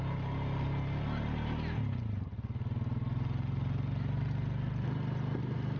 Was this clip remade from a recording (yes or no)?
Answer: no